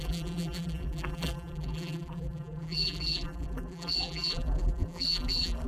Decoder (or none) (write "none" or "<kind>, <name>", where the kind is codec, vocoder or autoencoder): vocoder, BigVGAN v2